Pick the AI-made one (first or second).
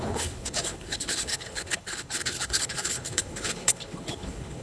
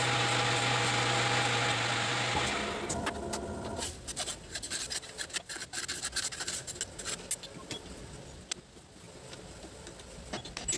first